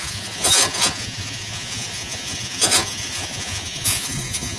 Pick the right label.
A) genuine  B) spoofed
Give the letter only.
B